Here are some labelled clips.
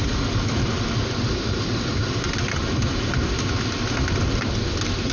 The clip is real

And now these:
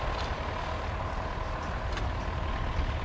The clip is real